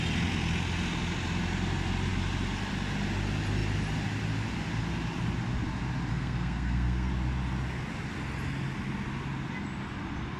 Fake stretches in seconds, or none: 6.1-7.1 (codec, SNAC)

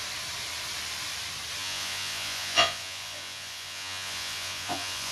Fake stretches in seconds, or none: 1.6-5.1 (vocoder, Vocos)